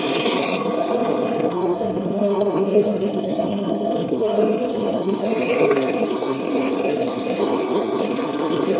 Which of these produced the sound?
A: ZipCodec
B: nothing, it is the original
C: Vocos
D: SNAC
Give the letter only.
D